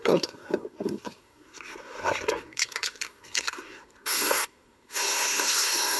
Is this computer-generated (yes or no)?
yes